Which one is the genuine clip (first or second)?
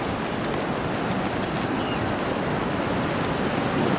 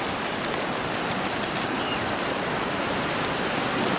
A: first